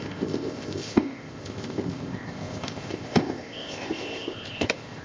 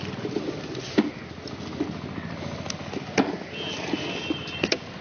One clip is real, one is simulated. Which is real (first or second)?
second